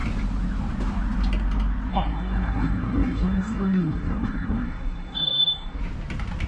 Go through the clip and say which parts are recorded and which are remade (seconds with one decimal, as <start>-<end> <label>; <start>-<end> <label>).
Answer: 0.0-1.9 recorded; 1.9-5.8 remade; 5.8-6.5 recorded